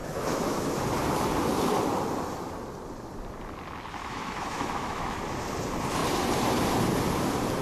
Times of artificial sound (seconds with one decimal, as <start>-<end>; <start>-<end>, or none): 0.0-0.8; 4.0-5.2